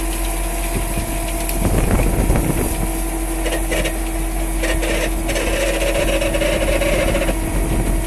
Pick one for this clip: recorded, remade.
recorded